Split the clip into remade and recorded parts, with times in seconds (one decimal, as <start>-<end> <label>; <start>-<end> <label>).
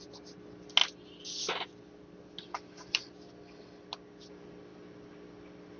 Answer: 0.0-5.8 recorded